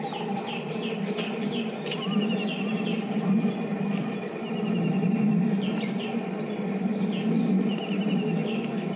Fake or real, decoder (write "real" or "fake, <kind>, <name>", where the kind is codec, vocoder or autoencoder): real